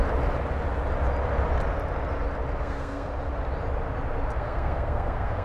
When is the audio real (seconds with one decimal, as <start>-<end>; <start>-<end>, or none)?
0.0-2.6; 3.1-4.3